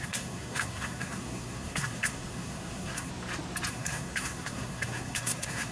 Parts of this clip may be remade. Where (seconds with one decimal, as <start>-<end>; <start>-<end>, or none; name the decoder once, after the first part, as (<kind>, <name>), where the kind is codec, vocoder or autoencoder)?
0.0-3.1 (codec, SNAC); 3.7-5.7